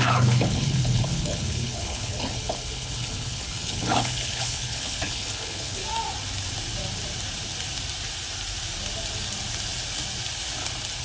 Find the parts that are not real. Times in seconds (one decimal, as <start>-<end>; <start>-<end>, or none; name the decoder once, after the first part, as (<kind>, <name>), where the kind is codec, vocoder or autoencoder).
0.0-5.8 (codec, HILCodec)